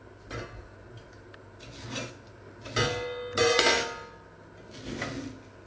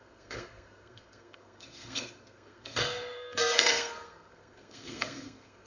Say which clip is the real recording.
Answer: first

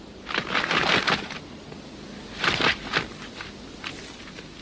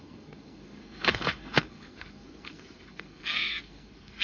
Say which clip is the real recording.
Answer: first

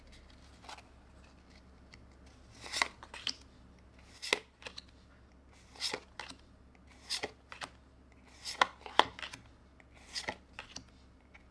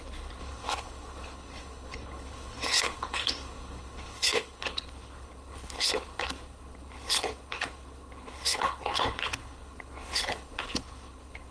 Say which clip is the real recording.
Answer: first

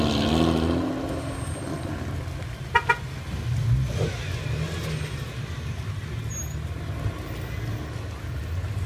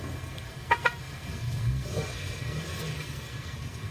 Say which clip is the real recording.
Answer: first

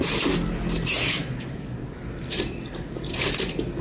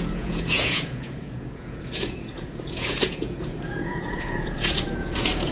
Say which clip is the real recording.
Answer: first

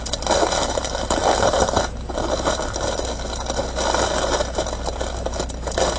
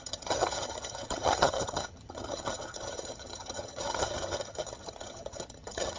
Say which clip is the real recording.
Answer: first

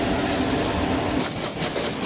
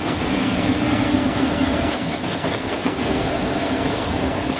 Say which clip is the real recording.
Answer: first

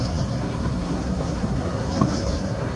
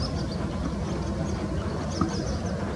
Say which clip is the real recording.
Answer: second